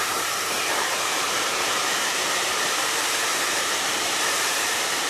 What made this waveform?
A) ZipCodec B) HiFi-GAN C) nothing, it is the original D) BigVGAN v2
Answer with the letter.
D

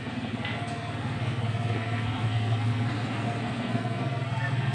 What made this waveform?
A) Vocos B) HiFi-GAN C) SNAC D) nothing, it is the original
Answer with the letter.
C